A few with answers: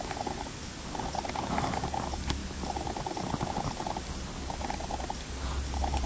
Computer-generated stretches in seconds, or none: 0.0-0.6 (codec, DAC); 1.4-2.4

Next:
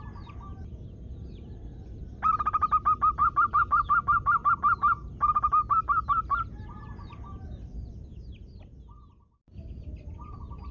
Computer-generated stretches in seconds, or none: 3.2-4.5 (codec, DAC)

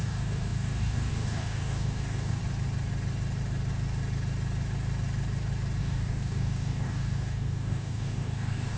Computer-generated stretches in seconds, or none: 0.0-2.4 (codec, DAC); 5.8-8.8

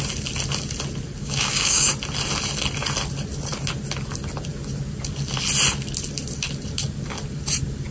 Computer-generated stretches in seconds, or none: 1.2-1.9 (codec, DAC)

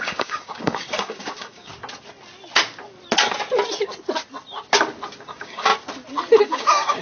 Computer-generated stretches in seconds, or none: 0.0-1.7 (codec, DAC); 5.2-5.7; 6.4-7.0

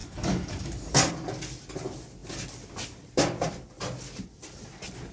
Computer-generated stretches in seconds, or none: 0.0-1.1 (codec, DAC)

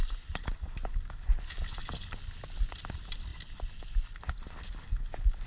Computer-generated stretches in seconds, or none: none

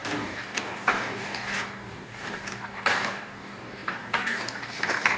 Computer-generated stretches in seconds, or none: 0.0-5.2 (codec, DAC)